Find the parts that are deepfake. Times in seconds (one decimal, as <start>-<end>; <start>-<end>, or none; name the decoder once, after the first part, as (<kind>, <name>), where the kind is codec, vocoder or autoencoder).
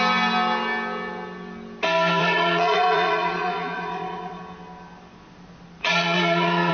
2.2-4.4 (vocoder, Vocos); 5.8-6.7